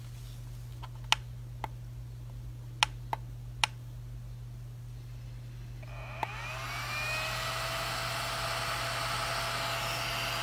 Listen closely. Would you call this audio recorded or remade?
recorded